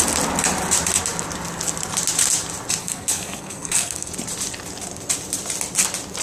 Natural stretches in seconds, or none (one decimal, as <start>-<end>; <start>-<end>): 0.0-2.8; 4.1-6.2